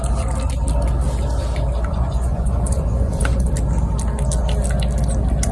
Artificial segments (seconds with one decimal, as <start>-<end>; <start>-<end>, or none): 1.9-3.5